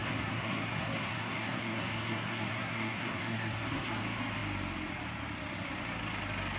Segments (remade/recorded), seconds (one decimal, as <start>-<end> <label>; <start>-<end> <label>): 0.0-4.0 remade; 4.0-6.6 recorded